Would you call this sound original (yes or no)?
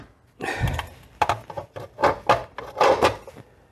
yes